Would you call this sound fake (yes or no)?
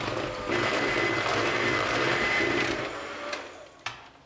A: yes